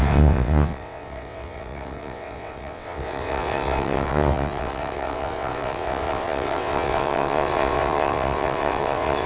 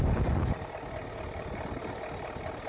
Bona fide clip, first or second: second